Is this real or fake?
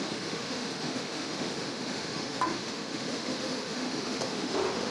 fake